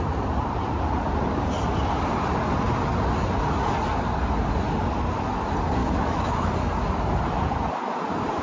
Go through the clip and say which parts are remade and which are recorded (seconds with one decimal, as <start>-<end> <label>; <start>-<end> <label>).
0.0-5.8 recorded; 5.8-6.5 remade; 6.5-8.4 recorded